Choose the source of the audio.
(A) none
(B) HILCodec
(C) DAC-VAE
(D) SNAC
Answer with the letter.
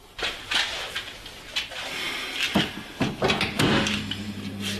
A